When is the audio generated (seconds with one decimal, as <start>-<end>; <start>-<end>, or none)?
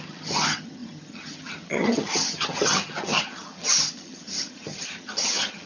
0.0-5.7